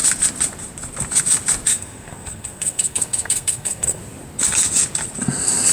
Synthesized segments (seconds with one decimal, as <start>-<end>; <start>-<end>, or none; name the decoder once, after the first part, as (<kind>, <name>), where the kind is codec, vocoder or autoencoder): 1.7-4.0 (codec, SNAC)